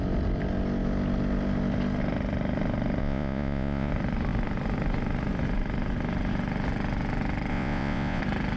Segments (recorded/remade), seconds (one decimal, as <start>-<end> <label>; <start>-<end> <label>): 0.0-3.0 recorded; 3.0-3.9 remade; 3.9-7.5 recorded; 7.5-8.2 remade; 8.2-8.6 recorded